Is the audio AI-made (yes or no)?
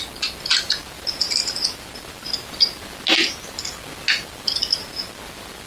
no